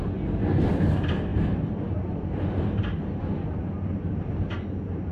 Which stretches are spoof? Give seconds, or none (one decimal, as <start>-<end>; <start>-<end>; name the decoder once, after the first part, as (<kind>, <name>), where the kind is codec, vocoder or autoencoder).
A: none